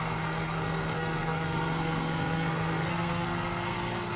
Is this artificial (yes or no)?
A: yes